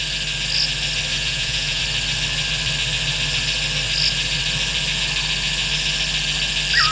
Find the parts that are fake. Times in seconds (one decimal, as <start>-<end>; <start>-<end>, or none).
1.1-1.8